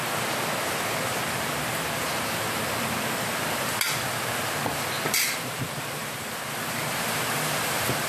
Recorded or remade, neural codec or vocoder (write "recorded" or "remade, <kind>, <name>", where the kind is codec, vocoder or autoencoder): remade, vocoder, BigVGAN v2